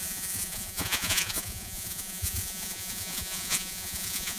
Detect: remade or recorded remade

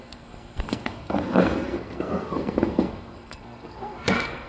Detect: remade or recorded remade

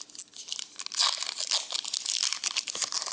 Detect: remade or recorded recorded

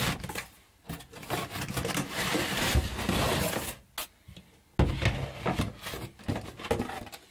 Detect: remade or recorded recorded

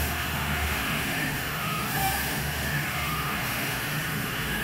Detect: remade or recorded remade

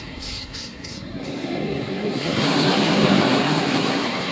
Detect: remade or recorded remade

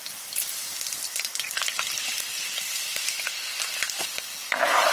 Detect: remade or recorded recorded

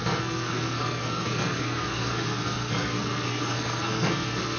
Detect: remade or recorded remade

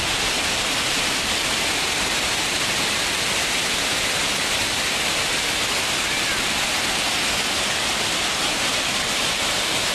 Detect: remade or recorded recorded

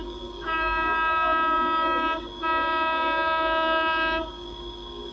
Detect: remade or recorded remade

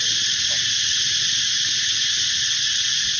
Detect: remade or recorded recorded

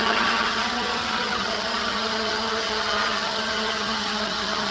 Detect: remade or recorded remade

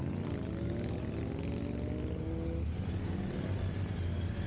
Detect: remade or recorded recorded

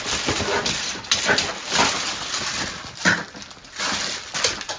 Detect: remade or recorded recorded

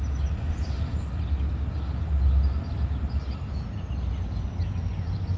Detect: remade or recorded recorded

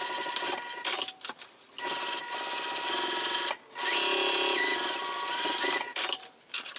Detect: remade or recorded recorded